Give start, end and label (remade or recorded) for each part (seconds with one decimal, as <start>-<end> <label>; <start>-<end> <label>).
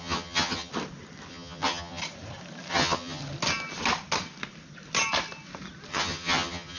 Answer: 0.0-0.7 remade; 0.7-1.3 recorded; 1.3-2.0 remade; 2.0-2.7 recorded; 2.7-3.2 remade; 3.2-5.9 recorded; 5.9-6.8 remade